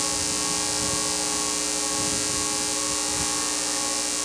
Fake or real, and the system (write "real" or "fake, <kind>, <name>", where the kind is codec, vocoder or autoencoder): real